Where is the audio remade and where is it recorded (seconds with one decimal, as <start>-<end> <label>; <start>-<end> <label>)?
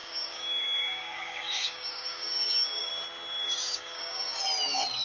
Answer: 0.0-2.9 remade; 2.9-3.4 recorded; 3.4-4.4 remade; 4.4-5.0 recorded